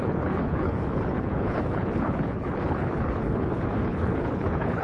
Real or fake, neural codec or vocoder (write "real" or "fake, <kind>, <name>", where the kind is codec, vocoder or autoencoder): fake, codec, HILCodec